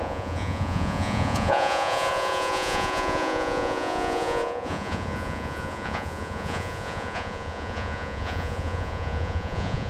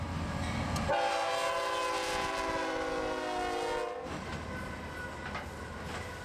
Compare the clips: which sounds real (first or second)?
second